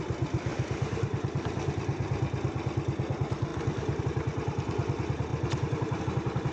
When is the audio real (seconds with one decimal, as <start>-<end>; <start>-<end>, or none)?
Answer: 0.0-0.5; 1.7-5.3; 6.0-6.5